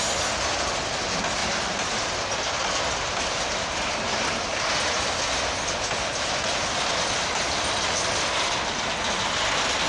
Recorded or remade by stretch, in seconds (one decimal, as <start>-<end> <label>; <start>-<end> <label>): 0.0-1.4 recorded; 1.4-2.0 remade; 2.0-9.9 recorded